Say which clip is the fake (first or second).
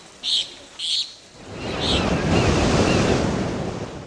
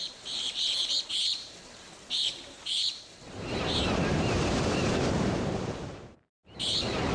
second